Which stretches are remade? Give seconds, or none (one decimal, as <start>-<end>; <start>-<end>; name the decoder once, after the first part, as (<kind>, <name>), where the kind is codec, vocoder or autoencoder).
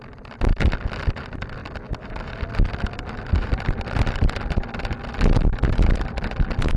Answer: none